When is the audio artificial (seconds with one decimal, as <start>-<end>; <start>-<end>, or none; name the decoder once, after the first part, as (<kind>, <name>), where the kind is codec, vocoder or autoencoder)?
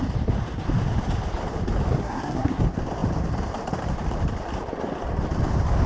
1.9-2.6 (codec, SNAC)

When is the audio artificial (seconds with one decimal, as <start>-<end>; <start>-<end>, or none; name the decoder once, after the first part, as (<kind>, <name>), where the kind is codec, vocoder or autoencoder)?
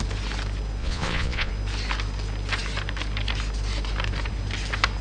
0.8-1.5 (vocoder, Vocos)